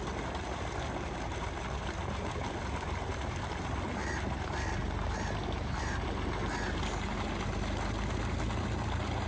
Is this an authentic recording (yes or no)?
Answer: yes